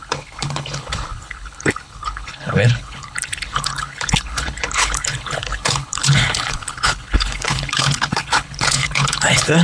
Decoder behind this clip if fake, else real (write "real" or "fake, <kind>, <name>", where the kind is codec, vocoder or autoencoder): fake, codec, HILCodec